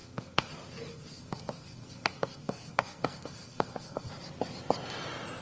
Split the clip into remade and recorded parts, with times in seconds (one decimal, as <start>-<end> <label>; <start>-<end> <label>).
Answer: 0.0-0.5 remade; 0.5-0.9 recorded; 0.9-4.1 remade; 4.1-5.4 recorded